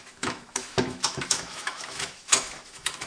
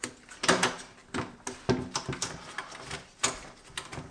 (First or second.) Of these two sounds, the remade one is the first